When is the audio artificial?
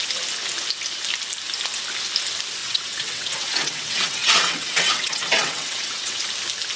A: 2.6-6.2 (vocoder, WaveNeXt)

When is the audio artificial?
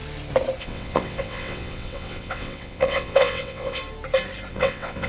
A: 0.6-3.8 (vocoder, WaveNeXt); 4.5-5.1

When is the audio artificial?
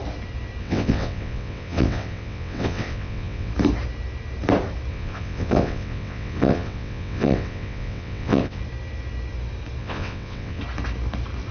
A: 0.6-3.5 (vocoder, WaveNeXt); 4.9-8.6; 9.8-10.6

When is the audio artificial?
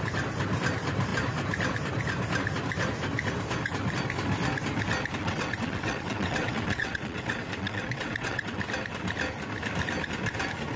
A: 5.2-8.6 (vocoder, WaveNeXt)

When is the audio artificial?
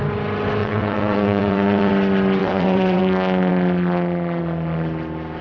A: 0.6-1.9 (vocoder, WaveNeXt); 2.4-3.0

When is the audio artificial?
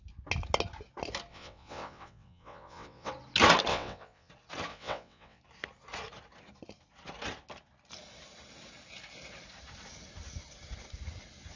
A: 1.3-3.1 (vocoder, WaveNeXt); 3.7-4.3; 4.7-5.4